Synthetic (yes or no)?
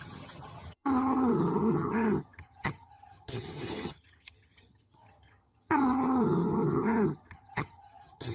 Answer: yes